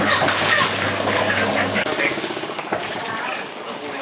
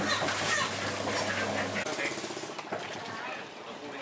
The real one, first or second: second